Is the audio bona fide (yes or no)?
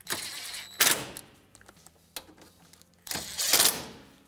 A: yes